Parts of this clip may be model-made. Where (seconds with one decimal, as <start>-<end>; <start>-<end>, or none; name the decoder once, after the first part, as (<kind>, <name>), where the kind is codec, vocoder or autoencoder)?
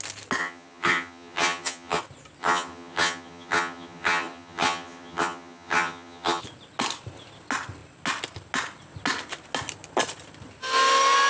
0.4-2.0 (vocoder, HiFi-GAN); 2.4-6.4